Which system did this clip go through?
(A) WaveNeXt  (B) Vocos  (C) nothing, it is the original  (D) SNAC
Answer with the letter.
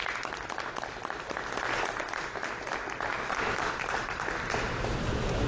C